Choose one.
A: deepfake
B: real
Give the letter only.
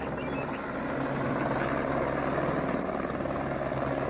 B